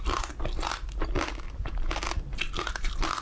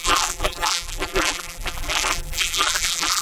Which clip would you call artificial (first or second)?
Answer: second